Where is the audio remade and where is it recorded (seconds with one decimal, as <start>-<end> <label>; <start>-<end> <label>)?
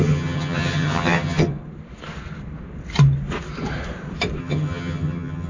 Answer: 0.0-1.5 remade; 1.5-4.4 recorded; 4.4-5.5 remade